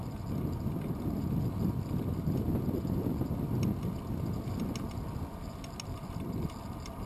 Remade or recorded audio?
recorded